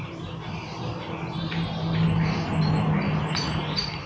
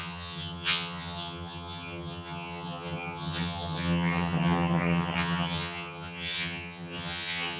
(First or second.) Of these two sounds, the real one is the first